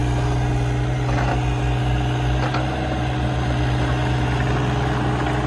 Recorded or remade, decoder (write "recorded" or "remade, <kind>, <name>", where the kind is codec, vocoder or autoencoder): recorded